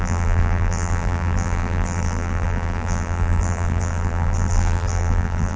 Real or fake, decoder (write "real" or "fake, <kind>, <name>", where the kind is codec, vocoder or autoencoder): fake, vocoder, BigVGAN v2